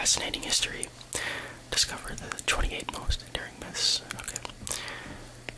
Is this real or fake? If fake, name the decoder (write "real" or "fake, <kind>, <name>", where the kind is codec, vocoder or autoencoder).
real